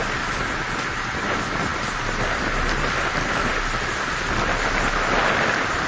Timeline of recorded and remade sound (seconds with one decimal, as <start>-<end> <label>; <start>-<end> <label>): 0.0-5.9 recorded